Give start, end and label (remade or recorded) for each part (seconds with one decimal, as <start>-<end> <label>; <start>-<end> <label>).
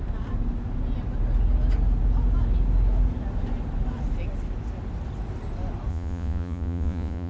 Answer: 0.0-5.9 recorded; 5.9-7.3 remade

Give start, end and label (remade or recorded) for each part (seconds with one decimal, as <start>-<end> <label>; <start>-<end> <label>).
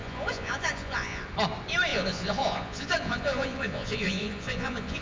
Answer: 0.0-1.2 remade; 1.2-1.9 recorded; 1.9-5.0 remade